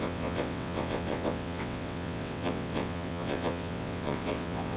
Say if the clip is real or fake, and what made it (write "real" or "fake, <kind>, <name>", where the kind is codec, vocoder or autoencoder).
fake, vocoder, WaveNeXt